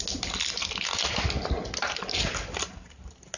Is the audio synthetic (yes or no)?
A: no